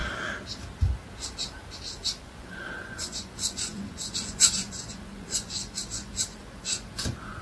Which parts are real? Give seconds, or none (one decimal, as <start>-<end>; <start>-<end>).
0.0-2.2